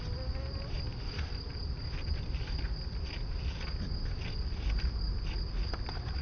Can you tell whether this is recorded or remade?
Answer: recorded